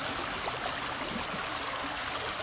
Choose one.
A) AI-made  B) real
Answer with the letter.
B